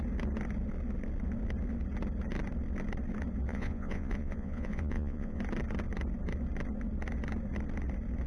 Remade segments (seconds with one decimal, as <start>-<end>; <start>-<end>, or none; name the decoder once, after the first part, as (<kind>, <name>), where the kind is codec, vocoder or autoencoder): 3.5-5.4 (vocoder, Vocos)